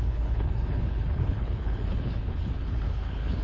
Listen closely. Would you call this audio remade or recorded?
remade